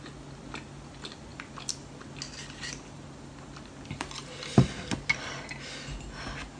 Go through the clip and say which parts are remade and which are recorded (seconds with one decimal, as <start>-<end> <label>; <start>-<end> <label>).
0.0-6.6 recorded